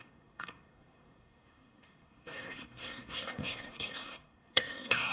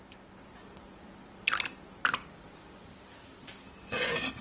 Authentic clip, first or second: second